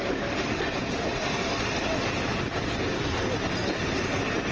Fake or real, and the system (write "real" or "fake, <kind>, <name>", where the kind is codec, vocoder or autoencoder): real